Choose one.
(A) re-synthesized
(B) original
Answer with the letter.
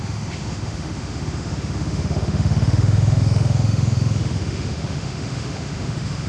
A